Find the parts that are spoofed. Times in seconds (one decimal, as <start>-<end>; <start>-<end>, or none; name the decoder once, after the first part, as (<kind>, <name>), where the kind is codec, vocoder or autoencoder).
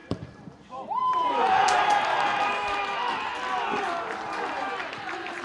0.0-1.6 (vocoder, BigVGAN v2); 4.8-5.4